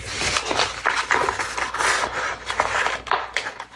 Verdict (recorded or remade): recorded